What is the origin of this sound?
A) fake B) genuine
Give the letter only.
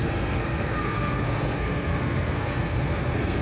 A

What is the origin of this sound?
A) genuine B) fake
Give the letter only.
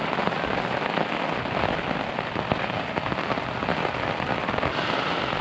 A